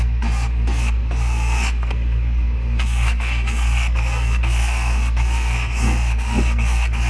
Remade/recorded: remade